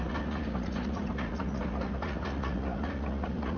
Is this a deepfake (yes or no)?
yes